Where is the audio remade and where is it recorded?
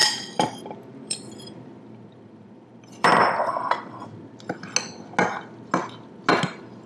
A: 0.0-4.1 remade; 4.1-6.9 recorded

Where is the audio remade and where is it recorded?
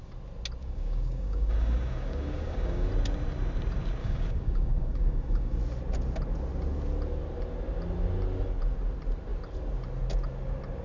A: 0.0-0.6 recorded; 0.6-2.9 remade; 2.9-4.0 recorded; 4.0-5.6 remade; 5.6-10.8 recorded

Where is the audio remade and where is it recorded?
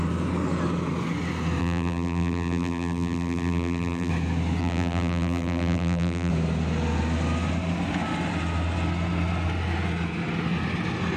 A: 0.0-1.6 recorded; 1.6-4.1 remade; 4.1-4.6 recorded; 4.6-6.3 remade; 6.3-11.2 recorded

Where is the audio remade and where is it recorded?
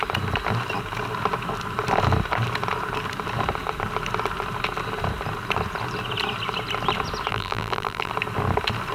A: 0.0-7.3 recorded; 7.3-8.1 remade; 8.1-8.9 recorded